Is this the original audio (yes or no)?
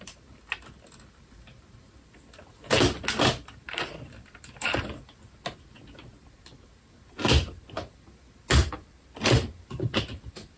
yes